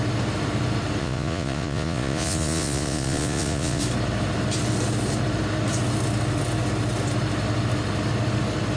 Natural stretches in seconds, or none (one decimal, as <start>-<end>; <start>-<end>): 0.0-1.0; 3.8-8.8